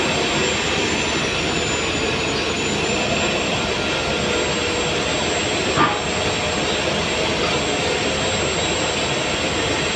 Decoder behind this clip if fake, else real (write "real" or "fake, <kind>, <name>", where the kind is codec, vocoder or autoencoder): real